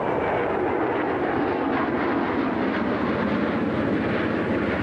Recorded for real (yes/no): yes